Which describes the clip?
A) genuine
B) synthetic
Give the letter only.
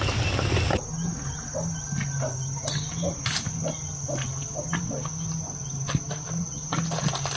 A